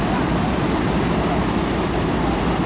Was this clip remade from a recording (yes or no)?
no